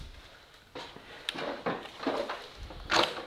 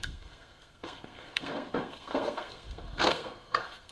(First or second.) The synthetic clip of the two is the second